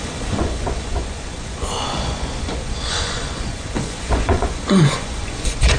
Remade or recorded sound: remade